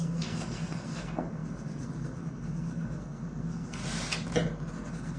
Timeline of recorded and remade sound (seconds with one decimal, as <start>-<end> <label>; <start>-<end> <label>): 0.0-3.8 remade; 3.8-4.7 recorded; 4.7-5.2 remade